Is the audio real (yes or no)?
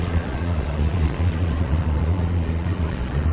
no